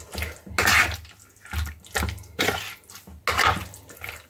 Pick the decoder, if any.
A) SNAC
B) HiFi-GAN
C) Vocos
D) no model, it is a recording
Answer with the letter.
D